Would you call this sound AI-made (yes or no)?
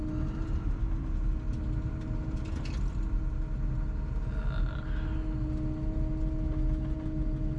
no